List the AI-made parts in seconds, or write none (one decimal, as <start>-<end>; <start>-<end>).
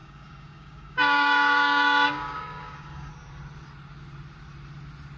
0.0-3.1